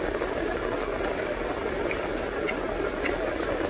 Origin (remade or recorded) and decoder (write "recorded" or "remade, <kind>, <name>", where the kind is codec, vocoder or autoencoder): recorded